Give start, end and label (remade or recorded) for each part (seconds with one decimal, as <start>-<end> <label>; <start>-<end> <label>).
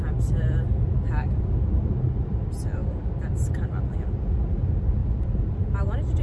0.0-5.0 recorded; 5.0-5.5 remade; 5.5-6.2 recorded